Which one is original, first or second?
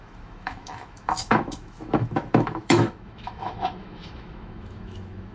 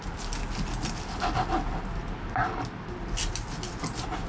second